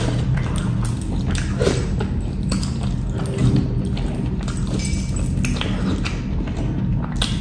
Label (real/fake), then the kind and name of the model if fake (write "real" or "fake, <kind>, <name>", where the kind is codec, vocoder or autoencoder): real